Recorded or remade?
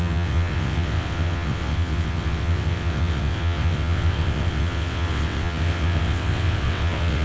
remade